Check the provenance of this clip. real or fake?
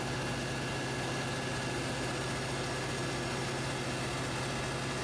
real